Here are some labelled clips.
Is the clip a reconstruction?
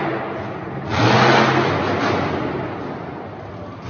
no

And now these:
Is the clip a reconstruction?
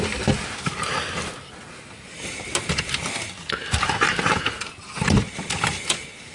no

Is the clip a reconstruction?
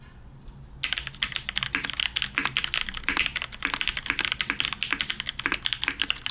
no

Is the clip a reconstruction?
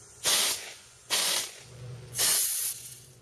yes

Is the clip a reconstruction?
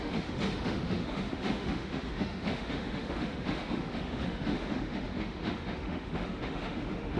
yes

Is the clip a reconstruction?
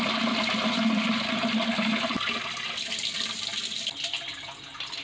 no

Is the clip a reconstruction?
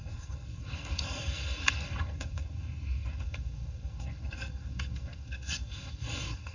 yes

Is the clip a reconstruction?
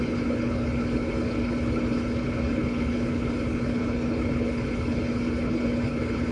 yes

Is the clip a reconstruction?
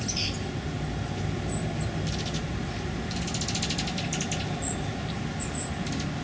no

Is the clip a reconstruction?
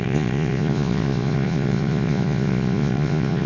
yes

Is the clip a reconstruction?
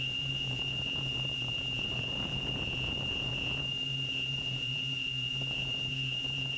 yes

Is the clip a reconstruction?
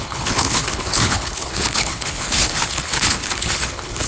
yes